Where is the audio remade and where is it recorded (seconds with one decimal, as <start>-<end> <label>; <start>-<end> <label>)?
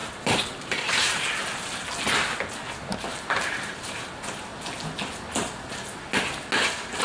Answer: 0.0-1.2 remade; 1.2-3.1 recorded; 3.1-4.1 remade; 4.1-7.0 recorded